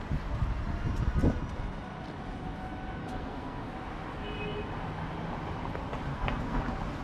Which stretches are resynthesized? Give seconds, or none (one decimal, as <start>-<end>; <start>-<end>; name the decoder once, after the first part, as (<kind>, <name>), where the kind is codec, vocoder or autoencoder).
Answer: 3.0-3.7 (codec, SNAC); 6.1-6.6